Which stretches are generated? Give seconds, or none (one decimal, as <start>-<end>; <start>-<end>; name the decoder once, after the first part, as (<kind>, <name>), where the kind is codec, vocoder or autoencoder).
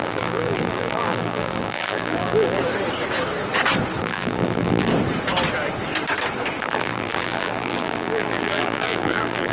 0.0-2.6 (vocoder, BigVGAN v2); 4.0-4.9; 6.6-9.5